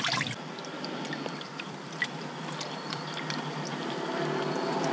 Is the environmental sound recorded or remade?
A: remade